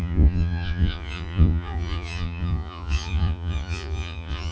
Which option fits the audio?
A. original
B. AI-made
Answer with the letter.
B